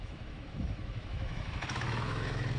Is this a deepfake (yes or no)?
yes